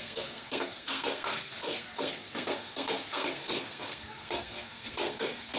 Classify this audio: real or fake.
fake